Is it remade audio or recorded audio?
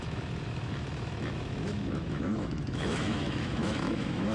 remade